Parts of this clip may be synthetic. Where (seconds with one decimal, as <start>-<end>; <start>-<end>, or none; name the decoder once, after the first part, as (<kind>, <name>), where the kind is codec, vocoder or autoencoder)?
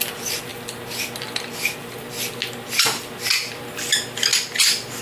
none